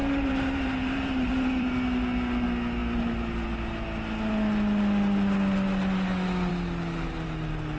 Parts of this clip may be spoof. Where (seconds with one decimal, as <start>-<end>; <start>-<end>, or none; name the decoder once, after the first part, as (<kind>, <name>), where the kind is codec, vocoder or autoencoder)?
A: 0.0-1.7 (vocoder, BigVGAN v2)